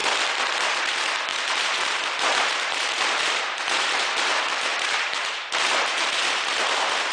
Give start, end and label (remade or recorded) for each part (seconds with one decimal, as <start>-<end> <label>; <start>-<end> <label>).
0.0-0.5 recorded; 0.5-7.1 remade